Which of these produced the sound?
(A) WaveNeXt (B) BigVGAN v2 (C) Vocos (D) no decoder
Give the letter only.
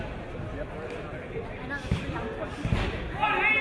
D